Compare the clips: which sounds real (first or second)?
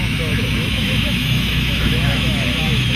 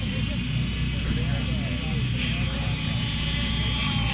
second